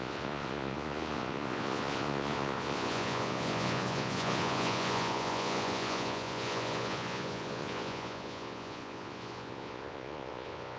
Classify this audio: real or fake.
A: fake